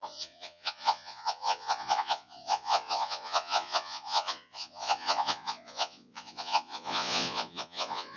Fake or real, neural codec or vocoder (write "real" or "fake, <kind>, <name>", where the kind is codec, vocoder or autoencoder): fake, vocoder, Vocos